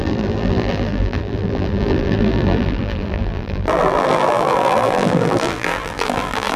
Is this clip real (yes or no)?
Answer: no